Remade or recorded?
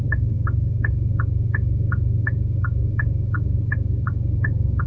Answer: remade